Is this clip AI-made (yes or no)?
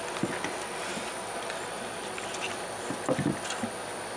no